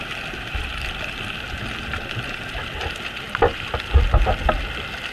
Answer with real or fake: real